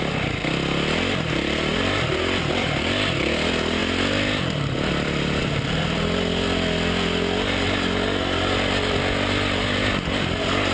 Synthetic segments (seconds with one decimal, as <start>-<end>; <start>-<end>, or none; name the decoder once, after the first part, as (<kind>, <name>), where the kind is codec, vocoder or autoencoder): none